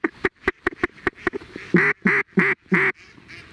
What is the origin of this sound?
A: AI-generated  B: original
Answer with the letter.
B